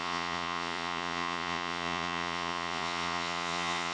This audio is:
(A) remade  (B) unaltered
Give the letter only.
A